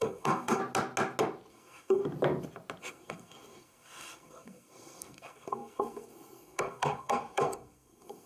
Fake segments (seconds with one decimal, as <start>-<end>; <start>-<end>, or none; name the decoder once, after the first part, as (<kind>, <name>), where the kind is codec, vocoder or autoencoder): 0.0-0.6 (codec, SNAC); 1.5-2.0; 2.8-8.3